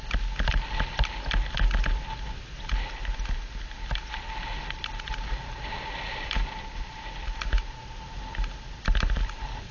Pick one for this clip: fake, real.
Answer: real